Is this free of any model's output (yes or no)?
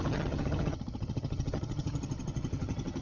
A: no